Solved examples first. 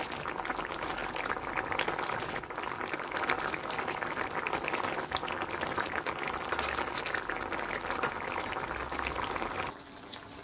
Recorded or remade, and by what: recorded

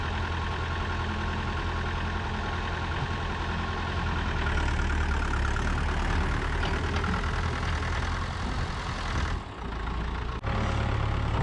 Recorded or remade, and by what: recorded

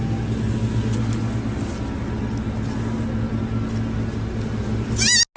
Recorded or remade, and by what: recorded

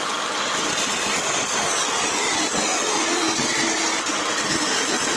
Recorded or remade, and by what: recorded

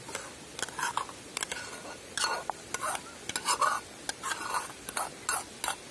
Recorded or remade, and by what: recorded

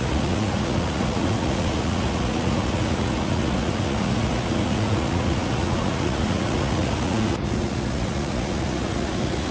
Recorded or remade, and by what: remade, vocoder, Vocos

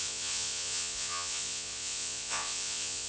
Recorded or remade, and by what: remade, vocoder, Vocos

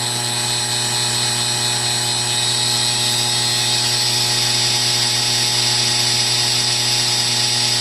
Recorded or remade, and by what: recorded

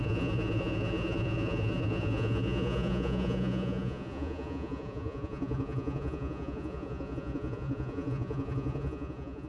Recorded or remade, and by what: remade, vocoder, Vocos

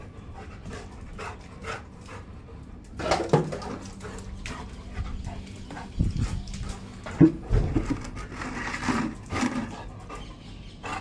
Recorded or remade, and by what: recorded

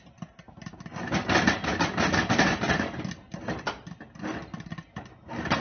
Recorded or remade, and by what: recorded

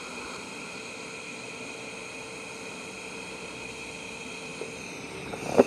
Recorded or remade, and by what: recorded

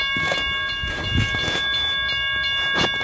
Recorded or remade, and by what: recorded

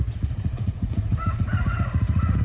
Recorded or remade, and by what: remade, vocoder, Vocos